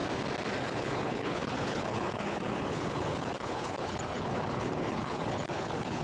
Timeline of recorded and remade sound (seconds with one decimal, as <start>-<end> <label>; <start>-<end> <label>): 0.0-0.6 recorded; 0.6-6.0 remade

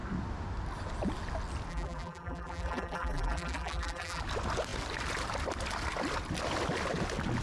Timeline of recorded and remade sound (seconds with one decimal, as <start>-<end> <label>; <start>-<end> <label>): 0.0-1.7 recorded; 1.7-4.2 remade; 4.2-7.4 recorded

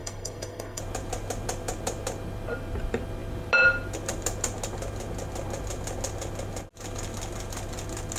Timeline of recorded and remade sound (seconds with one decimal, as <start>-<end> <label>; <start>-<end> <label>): 0.0-0.8 remade; 0.8-8.2 recorded

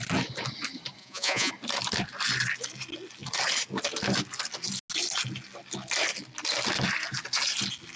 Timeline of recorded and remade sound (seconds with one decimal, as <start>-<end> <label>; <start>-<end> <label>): 0.0-1.0 recorded; 1.0-1.5 remade; 1.5-8.0 recorded

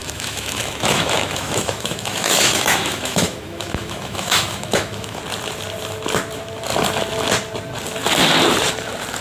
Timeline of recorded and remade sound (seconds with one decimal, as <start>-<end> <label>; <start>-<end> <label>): 0.0-5.2 remade; 5.2-9.2 recorded